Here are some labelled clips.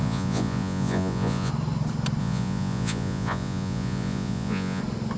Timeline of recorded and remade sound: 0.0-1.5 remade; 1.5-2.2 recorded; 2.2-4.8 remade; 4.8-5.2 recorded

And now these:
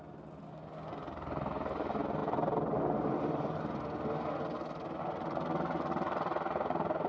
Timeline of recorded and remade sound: 0.0-7.1 recorded

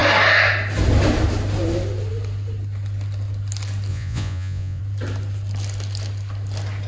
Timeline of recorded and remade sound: 0.0-3.9 recorded; 3.9-4.8 remade; 4.8-6.9 recorded